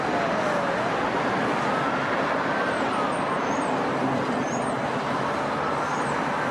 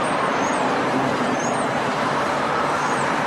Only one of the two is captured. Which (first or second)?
first